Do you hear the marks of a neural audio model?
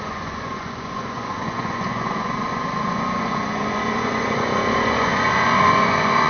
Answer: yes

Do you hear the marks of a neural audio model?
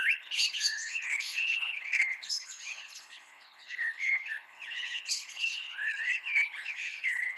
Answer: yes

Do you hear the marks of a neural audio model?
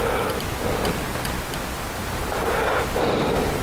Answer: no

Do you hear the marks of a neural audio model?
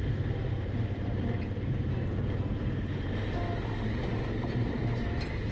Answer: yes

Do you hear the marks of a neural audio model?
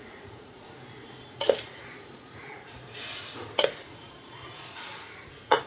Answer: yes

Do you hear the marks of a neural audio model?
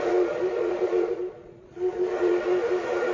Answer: yes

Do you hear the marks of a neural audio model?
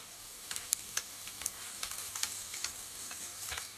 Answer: yes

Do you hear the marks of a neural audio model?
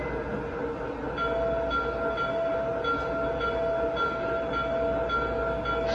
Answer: no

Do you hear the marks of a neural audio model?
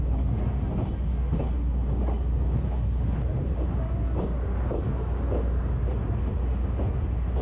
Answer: no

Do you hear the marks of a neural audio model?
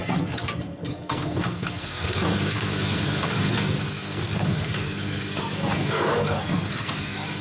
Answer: yes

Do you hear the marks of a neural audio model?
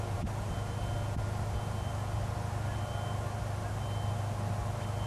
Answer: no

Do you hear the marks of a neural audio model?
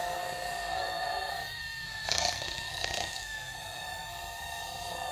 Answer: yes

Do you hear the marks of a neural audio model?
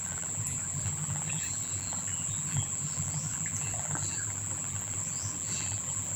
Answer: yes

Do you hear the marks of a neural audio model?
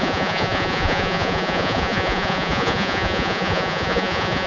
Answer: yes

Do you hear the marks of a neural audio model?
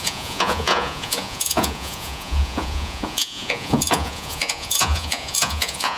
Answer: yes